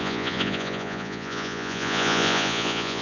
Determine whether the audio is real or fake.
fake